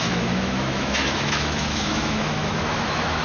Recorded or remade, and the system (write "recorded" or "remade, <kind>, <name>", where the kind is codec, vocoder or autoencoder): remade, autoencoder, DAC-VAE